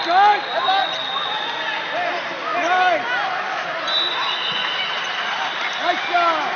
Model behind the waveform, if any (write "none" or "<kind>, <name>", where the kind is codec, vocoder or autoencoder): none